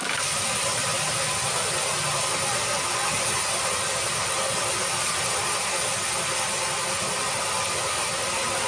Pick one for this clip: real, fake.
real